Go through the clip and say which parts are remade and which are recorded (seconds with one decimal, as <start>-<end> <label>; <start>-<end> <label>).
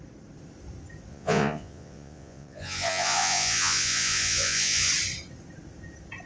0.0-1.1 recorded; 1.1-4.9 remade; 4.9-6.3 recorded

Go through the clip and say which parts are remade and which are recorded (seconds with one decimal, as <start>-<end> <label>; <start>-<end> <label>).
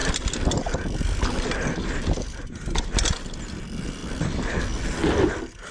0.0-5.7 recorded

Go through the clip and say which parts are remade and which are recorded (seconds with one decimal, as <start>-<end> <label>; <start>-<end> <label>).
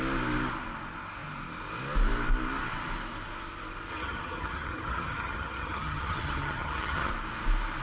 0.0-3.9 recorded; 3.9-7.1 remade; 7.1-7.8 recorded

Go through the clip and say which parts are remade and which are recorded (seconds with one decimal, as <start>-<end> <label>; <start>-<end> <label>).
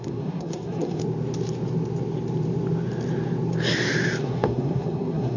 0.0-1.0 remade; 1.0-4.2 recorded; 4.2-5.4 remade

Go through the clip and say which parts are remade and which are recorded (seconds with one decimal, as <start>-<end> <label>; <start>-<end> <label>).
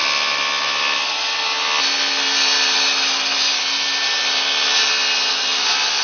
0.0-6.0 recorded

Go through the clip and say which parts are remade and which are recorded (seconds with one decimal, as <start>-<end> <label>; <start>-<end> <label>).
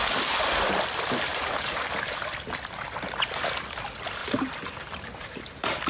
0.0-1.3 recorded; 1.3-2.1 remade; 2.1-4.2 recorded; 4.2-5.4 remade; 5.4-5.9 recorded